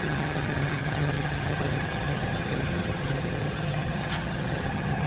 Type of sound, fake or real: fake